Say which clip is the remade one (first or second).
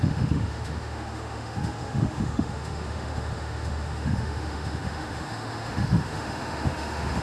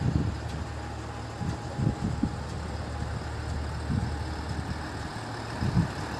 first